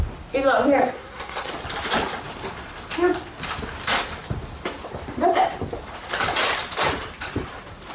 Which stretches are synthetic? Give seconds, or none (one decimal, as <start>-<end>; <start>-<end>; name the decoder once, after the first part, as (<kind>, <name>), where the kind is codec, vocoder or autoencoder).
0.8-1.5 (codec, SNAC)